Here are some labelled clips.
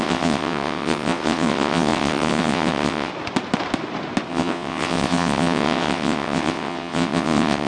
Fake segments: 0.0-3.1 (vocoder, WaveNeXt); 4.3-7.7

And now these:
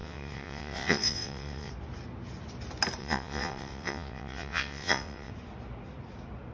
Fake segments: 0.0-1.7 (vocoder, WaveNeXt); 3.0-5.3

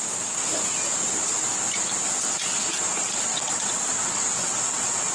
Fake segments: 3.3-3.9 (vocoder, WaveNeXt); 4.4-5.1